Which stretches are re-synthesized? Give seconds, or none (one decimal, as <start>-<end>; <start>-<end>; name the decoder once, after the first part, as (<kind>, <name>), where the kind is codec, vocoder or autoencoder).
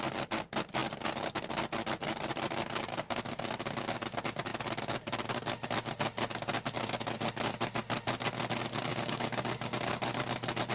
2.9-3.4 (codec, DAC); 8.9-10.0